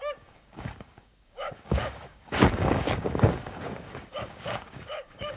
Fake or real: fake